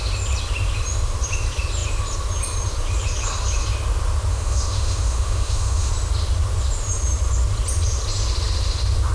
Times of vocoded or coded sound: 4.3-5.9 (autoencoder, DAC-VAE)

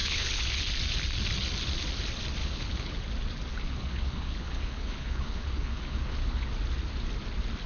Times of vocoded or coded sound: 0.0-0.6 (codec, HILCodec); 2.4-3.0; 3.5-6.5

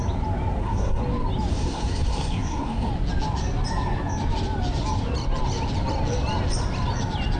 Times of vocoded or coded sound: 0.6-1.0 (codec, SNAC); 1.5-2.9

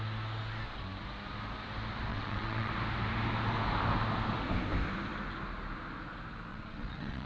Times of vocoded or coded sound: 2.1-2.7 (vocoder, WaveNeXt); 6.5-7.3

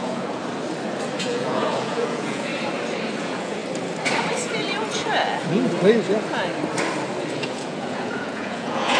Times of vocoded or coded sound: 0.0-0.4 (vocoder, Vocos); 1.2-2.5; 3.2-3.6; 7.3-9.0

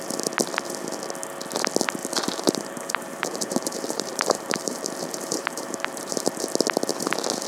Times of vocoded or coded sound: 2.0-6.5 (vocoder, BigVGAN v2)

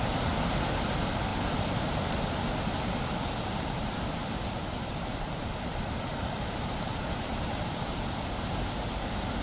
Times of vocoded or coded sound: 1.3-2.0 (vocoder, BigVGAN v2); 4.2-8.0